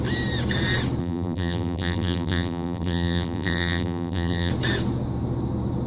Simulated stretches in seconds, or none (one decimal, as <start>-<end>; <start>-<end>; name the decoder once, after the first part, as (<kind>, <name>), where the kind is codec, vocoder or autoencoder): 1.0-4.5 (vocoder, BigVGAN v2)